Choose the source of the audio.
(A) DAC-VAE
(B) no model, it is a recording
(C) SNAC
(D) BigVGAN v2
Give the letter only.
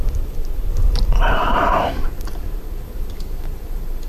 D